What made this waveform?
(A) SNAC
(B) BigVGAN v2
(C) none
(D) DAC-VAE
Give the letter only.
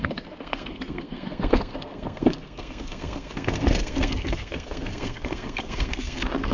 A